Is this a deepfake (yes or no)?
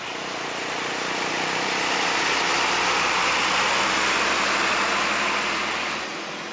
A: no